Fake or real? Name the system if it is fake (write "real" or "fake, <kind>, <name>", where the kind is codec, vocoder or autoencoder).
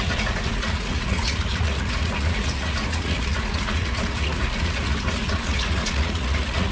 fake, vocoder, Vocos